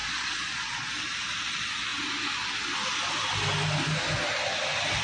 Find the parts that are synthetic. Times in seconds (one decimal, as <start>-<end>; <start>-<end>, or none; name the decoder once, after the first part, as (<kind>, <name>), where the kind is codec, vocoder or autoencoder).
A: 0.0-0.9 (vocoder, Vocos)